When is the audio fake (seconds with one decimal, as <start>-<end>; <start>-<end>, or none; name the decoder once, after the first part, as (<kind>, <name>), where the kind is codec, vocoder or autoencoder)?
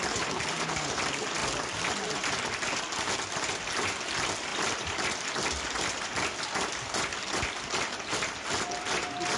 none